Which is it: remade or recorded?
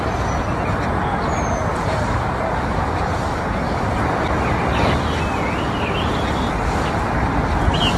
recorded